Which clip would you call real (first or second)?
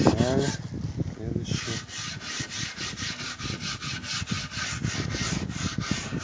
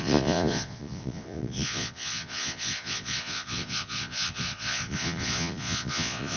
first